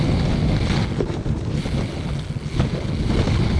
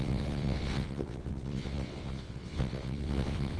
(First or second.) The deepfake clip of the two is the second